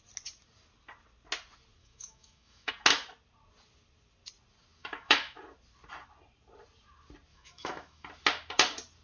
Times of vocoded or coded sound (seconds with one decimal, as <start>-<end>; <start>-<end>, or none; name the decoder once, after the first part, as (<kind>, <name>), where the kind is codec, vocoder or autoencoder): 1.8-2.7 (autoencoder, DAC-VAE); 4.8-5.4; 7.3-8.1